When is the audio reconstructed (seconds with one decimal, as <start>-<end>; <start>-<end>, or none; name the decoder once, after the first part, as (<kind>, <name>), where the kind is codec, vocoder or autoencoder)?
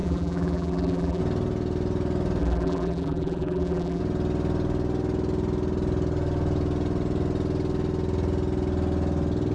0.0-1.2 (vocoder, BigVGAN v2); 2.4-4.0